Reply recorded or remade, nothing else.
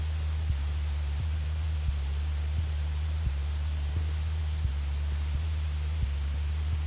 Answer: recorded